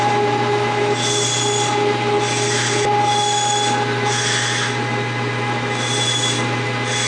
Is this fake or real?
real